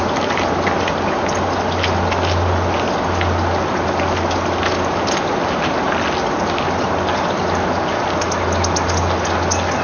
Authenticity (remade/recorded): recorded